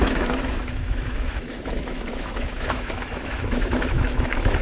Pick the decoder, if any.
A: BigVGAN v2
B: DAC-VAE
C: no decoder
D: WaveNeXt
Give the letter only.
B